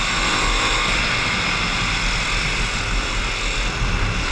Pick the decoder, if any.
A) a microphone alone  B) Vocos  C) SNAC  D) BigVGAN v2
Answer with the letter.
A